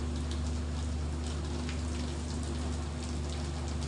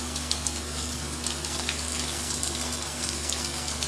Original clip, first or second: first